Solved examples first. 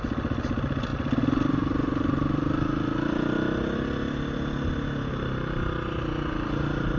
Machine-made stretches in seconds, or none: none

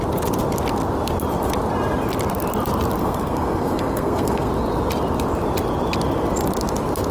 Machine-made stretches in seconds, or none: 3.0-4.5 (codec, SNAC)

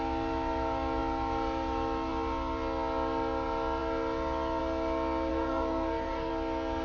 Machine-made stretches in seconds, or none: 5.3-6.3 (codec, SNAC)

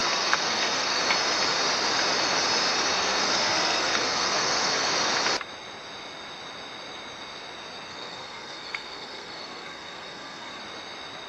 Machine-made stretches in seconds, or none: 0.0-1.0 (codec, SNAC); 3.0-4.9; 7.9-10.6

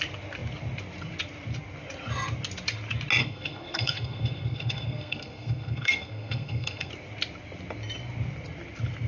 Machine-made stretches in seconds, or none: 3.2-6.9 (codec, SNAC)

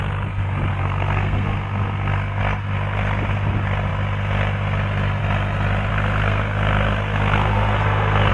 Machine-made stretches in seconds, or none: 0.7-2.4 (codec, SNAC); 5.9-8.3